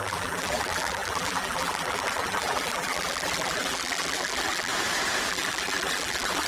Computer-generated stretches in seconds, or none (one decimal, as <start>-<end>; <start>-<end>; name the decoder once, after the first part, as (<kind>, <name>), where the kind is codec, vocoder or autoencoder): 0.0-4.7 (vocoder, BigVGAN v2); 5.3-6.5